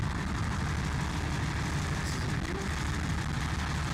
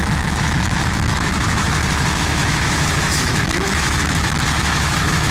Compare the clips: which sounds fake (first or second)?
second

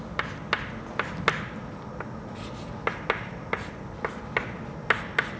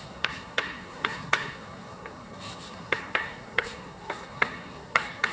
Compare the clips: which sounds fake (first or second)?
second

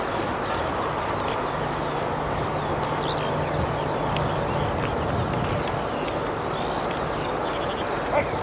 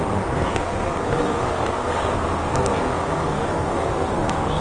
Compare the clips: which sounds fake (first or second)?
second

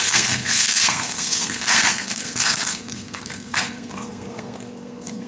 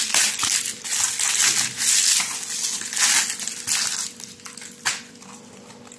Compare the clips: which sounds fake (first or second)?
first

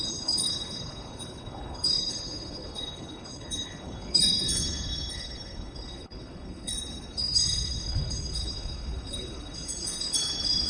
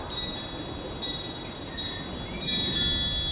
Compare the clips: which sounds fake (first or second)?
first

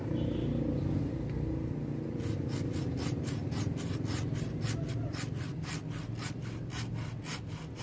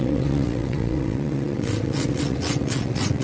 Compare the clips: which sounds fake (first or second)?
second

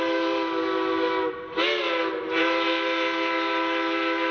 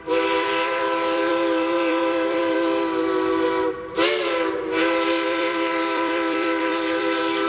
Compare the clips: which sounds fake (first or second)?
second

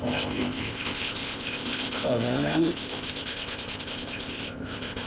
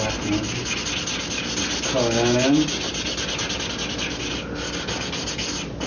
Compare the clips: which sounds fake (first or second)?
first